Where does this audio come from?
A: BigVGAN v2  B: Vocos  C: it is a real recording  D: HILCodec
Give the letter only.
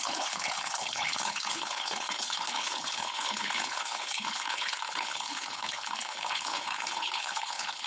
D